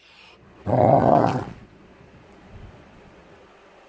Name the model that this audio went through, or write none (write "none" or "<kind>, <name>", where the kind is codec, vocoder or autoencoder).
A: vocoder, Vocos